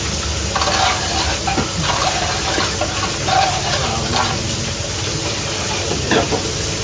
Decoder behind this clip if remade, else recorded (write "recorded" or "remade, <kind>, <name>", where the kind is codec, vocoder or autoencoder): recorded